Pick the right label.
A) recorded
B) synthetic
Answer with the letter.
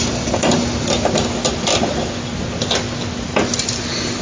A